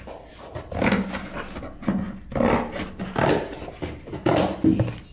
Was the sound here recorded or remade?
recorded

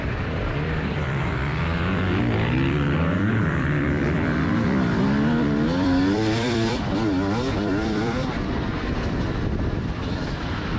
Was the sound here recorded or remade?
remade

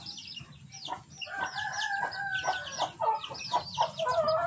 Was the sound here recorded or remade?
recorded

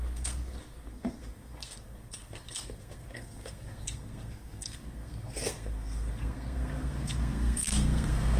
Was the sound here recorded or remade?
remade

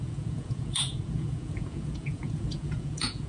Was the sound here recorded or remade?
remade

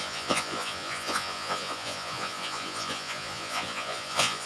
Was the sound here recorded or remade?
remade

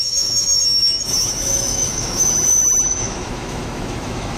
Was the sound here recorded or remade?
remade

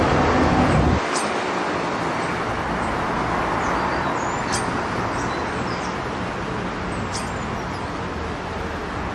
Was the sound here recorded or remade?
recorded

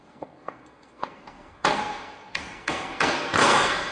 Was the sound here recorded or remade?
remade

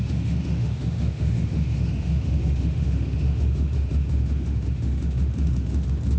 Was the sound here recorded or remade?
remade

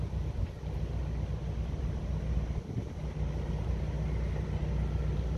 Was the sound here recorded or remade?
recorded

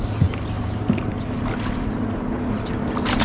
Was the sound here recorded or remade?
recorded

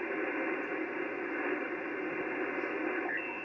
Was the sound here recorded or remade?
recorded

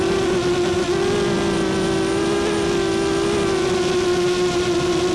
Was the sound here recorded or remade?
recorded